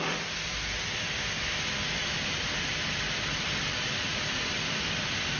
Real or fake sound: fake